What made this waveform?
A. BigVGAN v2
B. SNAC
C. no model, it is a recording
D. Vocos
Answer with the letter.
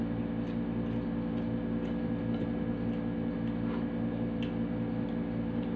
C